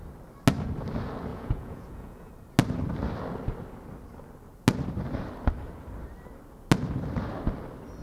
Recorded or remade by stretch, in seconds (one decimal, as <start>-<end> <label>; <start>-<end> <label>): 0.0-1.3 recorded; 1.3-2.3 remade; 2.3-8.0 recorded